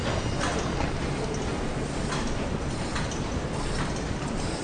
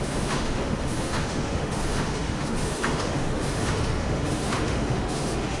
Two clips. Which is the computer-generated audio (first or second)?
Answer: second